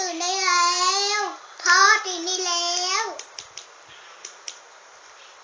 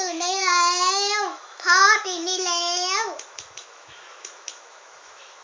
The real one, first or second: first